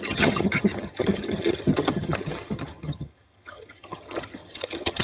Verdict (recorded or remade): remade